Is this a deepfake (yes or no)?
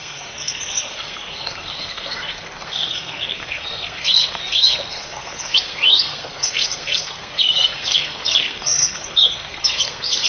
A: yes